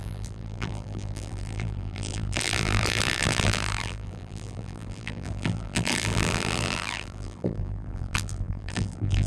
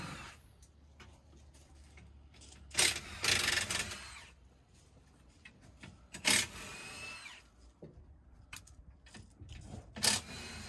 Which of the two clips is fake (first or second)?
first